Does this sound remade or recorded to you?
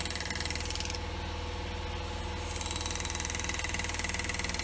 recorded